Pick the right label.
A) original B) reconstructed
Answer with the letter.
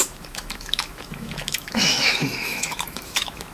B